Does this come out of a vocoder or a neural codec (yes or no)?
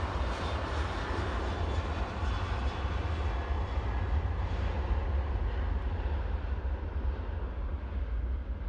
no